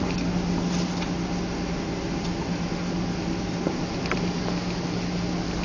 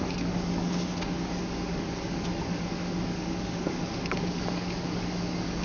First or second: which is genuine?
first